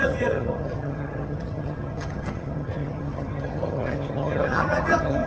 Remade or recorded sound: remade